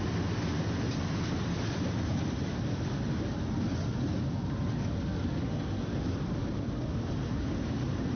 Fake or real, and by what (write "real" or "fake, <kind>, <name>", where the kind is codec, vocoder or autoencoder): real